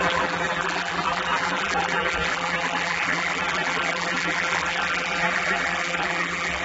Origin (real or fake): fake